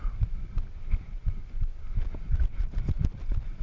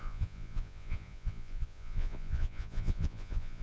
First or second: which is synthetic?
second